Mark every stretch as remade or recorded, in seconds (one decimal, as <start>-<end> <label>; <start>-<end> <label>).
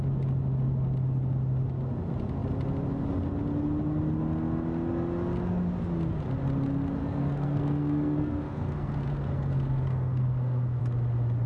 0.0-7.0 recorded; 7.0-10.8 remade; 10.8-11.5 recorded